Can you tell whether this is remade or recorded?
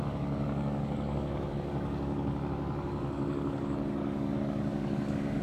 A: remade